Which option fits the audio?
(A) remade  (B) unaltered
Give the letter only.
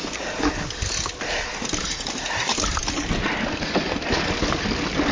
B